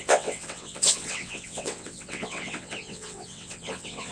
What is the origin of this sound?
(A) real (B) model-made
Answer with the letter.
B